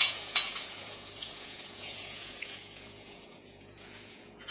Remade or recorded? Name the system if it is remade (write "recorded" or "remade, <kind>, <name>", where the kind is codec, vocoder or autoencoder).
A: remade, vocoder, Vocos